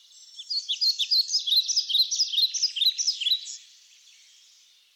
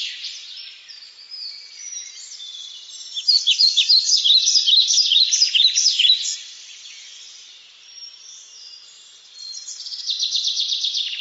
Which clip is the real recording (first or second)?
first